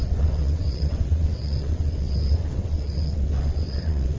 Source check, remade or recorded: remade